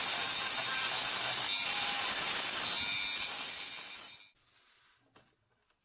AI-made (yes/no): no